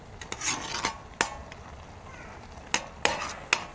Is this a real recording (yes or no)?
yes